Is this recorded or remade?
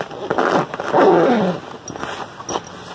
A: recorded